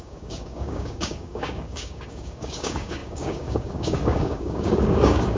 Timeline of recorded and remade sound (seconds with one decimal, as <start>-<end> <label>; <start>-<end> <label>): 0.0-5.4 remade